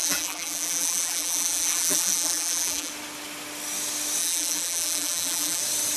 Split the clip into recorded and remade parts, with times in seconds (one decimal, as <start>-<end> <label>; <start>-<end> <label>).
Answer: 0.0-2.9 remade; 2.9-4.2 recorded; 4.2-5.6 remade; 5.6-6.0 recorded